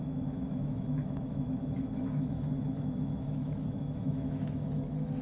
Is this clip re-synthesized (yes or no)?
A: yes